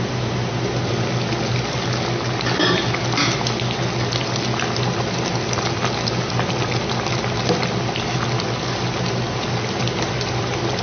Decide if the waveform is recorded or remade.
recorded